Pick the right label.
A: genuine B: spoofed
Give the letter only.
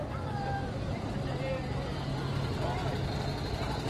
A